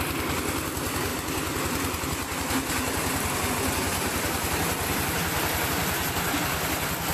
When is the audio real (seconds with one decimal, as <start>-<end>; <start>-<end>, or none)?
0.0-3.9; 6.1-7.1

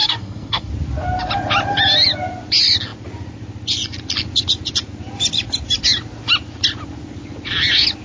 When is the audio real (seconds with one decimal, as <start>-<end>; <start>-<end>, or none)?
0.7-8.0

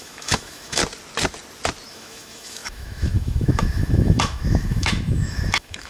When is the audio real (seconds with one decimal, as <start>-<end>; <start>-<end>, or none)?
0.8-1.9

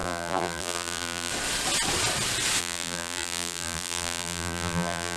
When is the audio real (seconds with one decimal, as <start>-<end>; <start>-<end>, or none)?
1.3-2.6

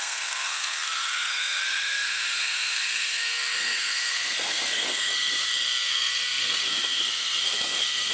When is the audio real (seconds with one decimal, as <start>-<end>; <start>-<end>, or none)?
none

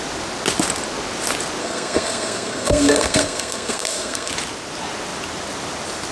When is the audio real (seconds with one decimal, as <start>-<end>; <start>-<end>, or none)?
0.0-1.6; 4.3-6.1

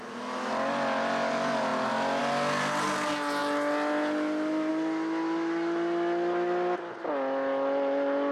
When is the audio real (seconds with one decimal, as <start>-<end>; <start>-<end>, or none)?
0.0-8.3

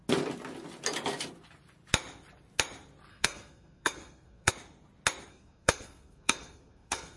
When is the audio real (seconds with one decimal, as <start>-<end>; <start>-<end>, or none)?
0.0-3.1; 4.5-5.3